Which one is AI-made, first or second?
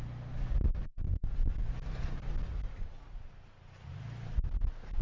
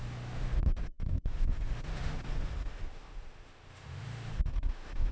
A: second